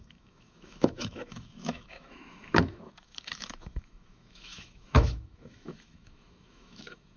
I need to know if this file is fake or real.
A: fake